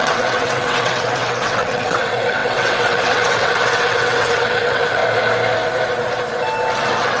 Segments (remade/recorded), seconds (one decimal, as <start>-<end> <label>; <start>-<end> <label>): 0.0-5.0 remade; 5.0-6.8 recorded; 6.8-7.2 remade